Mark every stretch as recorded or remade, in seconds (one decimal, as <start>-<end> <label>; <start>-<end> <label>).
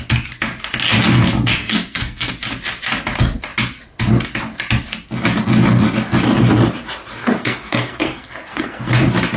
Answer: 0.0-1.6 recorded; 1.6-2.3 remade; 2.3-7.2 recorded; 7.2-8.9 remade; 8.9-9.4 recorded